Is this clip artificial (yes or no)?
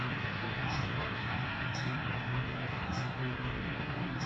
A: yes